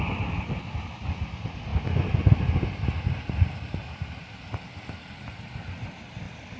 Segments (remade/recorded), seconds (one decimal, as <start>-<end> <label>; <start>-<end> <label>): 0.0-6.6 recorded